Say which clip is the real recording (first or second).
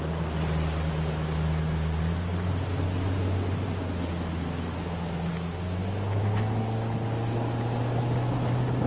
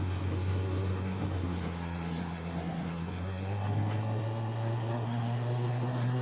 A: first